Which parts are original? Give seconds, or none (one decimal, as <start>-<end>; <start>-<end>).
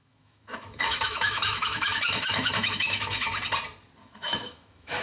3.3-4.0